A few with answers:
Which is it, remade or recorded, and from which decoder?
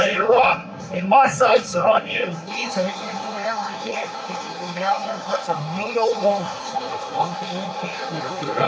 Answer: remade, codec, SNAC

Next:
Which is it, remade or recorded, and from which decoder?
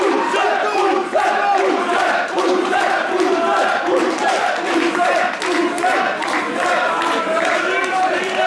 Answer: remade, vocoder, BigVGAN v2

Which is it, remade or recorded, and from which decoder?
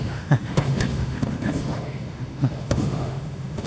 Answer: remade, autoencoder, DAC-VAE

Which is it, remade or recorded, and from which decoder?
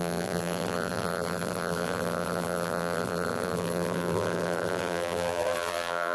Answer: remade, vocoder, BigVGAN v2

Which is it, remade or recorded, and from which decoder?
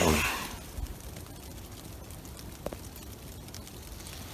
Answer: recorded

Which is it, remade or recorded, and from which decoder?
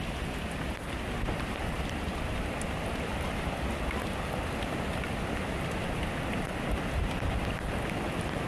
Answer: recorded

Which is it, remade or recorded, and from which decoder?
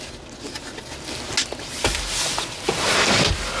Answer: recorded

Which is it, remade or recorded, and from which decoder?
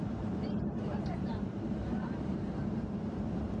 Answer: remade, vocoder, BigVGAN v2